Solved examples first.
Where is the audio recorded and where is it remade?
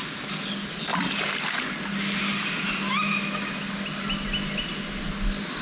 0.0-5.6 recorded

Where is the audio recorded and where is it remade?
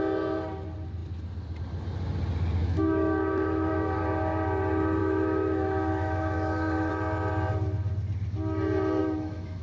0.0-2.6 recorded; 2.6-4.0 remade; 4.0-5.0 recorded; 5.0-6.9 remade; 6.9-9.0 recorded; 9.0-9.6 remade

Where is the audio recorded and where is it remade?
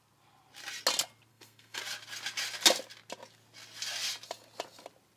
0.0-1.3 recorded; 1.3-1.8 remade; 1.8-5.2 recorded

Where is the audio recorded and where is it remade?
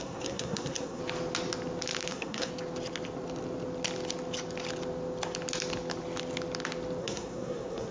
0.0-1.0 remade; 1.0-2.1 recorded; 2.1-2.5 remade; 2.5-7.0 recorded; 7.0-7.9 remade